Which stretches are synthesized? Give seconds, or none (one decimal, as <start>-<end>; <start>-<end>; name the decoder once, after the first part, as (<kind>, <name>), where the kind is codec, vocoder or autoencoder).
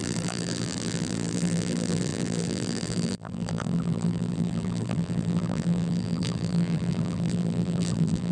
0.0-8.3 (vocoder, BigVGAN v2)